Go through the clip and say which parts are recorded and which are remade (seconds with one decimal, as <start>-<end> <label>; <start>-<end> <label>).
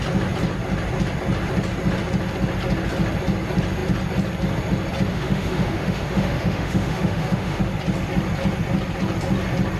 0.0-5.1 recorded; 5.1-7.6 remade; 7.6-9.8 recorded